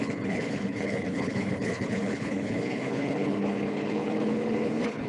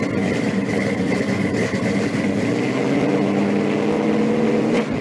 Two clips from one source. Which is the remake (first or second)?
first